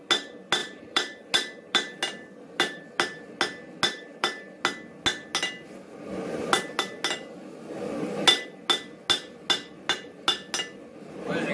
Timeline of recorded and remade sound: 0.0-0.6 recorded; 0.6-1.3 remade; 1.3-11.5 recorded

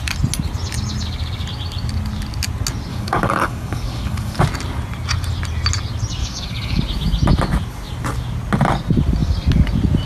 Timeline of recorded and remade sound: 0.0-2.9 recorded; 2.9-4.4 remade; 4.4-6.2 recorded; 6.2-6.8 remade; 6.8-10.1 recorded

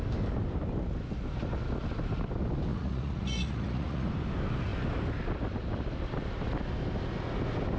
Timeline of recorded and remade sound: 0.0-2.7 recorded; 2.7-4.1 remade; 4.1-7.8 recorded

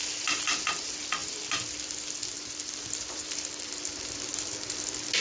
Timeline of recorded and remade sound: 0.0-1.2 recorded; 1.2-4.3 remade; 4.3-5.2 recorded

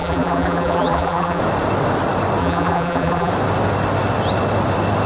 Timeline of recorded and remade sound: 0.0-1.4 remade; 1.4-2.4 recorded; 2.4-3.3 remade; 3.3-5.1 recorded